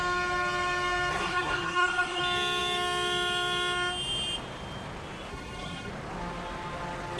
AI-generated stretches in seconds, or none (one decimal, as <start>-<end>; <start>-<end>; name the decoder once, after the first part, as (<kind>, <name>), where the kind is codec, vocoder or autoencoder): 1.1-2.2 (codec, SNAC); 5.3-5.9